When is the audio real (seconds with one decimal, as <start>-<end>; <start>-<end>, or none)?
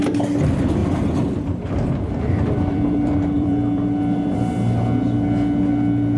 0.0-0.8; 4.5-6.2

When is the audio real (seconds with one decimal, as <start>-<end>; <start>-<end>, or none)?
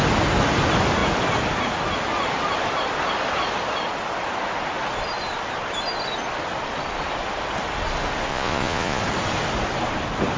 0.0-8.3; 9.0-10.4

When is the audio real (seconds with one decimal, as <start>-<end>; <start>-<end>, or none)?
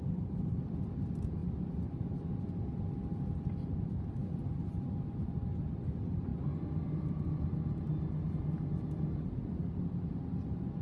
0.0-10.8